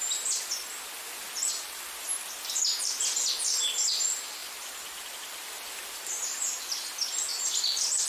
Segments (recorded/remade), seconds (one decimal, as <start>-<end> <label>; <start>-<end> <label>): 0.0-4.4 recorded; 4.4-6.1 remade; 6.1-7.3 recorded; 7.3-8.1 remade